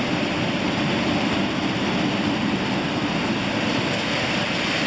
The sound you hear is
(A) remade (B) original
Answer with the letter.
A